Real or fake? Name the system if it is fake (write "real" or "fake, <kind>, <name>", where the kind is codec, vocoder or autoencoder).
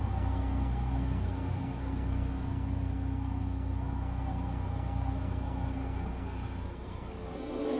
fake, codec, SNAC